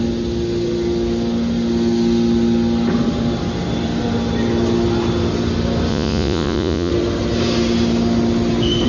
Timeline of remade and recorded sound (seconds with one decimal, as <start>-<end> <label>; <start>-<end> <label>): 0.0-5.9 recorded; 5.9-6.9 remade; 6.9-8.9 recorded